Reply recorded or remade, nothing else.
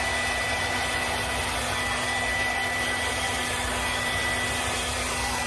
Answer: recorded